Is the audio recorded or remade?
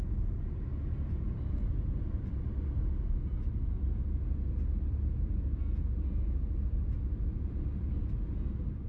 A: recorded